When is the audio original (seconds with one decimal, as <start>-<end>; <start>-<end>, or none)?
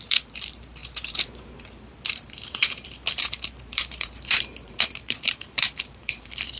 none